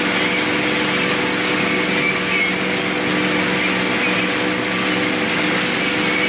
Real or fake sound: real